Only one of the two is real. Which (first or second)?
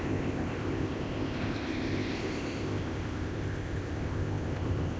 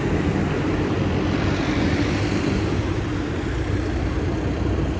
second